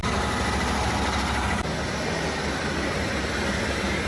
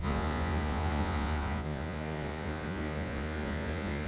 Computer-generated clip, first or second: second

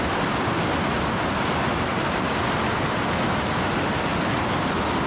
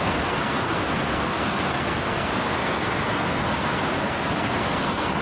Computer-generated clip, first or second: second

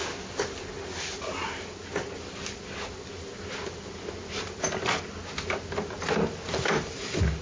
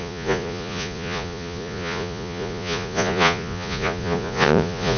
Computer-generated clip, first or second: second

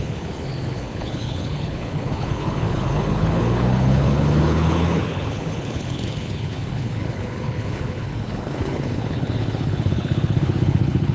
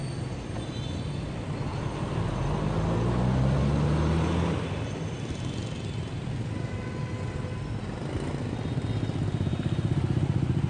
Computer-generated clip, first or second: first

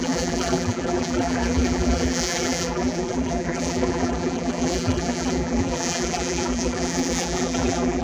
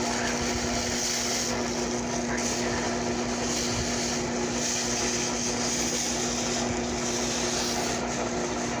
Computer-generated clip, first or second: first